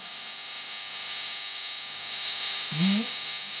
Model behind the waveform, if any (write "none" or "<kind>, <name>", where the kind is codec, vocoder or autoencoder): none